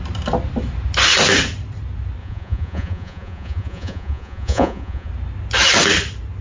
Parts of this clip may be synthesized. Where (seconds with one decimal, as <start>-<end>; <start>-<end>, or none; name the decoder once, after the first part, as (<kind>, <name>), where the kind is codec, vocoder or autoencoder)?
2.2-5.1 (vocoder, Vocos)

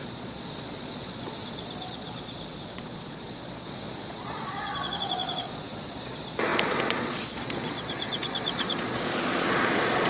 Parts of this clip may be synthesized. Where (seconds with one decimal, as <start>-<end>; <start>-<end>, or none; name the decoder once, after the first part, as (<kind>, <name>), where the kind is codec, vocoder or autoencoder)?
0.0-10.1 (vocoder, Vocos)

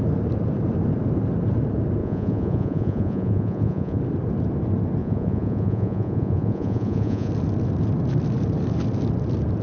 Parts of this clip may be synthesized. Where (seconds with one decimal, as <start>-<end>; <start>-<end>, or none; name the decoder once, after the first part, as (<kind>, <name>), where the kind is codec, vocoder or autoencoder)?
2.0-4.0 (vocoder, Vocos); 5.0-7.3